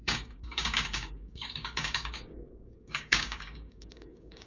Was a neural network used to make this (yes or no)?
yes